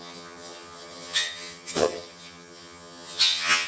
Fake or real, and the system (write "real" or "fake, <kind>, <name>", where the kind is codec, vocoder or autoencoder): fake, vocoder, HiFi-GAN